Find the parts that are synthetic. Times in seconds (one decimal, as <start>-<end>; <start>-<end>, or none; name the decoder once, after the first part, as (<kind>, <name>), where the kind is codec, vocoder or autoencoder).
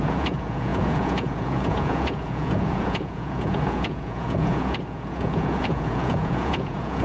0.0-7.0 (vocoder, Vocos)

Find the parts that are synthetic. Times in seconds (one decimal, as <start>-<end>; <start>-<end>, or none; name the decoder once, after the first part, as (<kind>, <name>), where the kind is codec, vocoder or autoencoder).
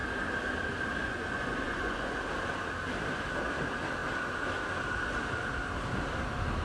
1.0-2.2 (vocoder, Vocos)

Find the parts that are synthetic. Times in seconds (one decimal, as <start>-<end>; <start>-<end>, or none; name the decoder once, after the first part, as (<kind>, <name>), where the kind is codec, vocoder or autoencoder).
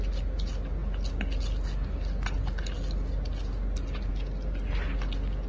none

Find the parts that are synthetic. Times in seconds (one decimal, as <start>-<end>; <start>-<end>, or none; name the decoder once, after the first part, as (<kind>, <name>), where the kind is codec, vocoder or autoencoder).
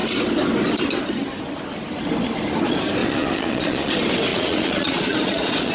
3.0-3.9 (vocoder, Vocos); 4.3-5.7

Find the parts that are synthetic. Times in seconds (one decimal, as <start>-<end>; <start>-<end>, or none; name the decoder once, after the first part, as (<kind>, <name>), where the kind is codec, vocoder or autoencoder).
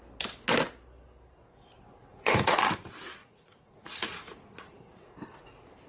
2.1-2.6 (vocoder, Vocos); 3.2-5.4